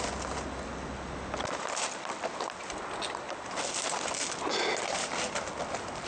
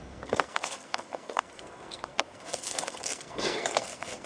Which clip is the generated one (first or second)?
second